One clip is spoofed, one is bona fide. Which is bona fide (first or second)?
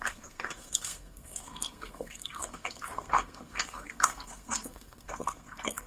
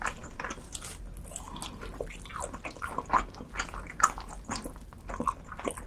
second